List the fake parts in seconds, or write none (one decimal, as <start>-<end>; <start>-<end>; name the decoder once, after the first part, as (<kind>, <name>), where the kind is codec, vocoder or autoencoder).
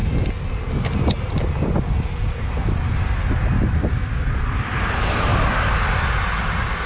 0.0-6.9 (vocoder, BigVGAN v2)